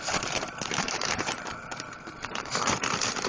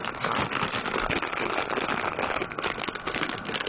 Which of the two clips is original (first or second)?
second